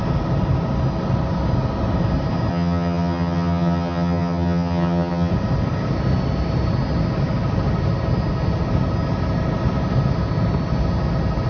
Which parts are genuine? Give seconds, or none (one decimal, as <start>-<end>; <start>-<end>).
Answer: 0.0-2.5; 5.3-11.5